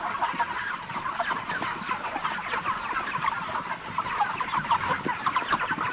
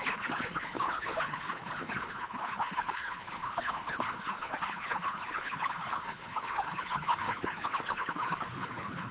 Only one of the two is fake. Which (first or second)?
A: second